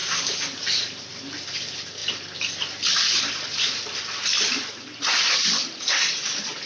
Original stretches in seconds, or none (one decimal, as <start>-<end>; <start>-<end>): 0.0-2.0; 3.7-6.7